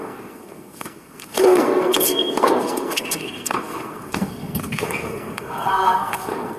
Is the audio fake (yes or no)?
yes